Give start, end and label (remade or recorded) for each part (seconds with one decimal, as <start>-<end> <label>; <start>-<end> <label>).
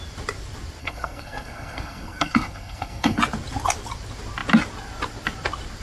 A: 0.0-0.8 recorded; 0.8-3.2 remade; 3.2-5.8 recorded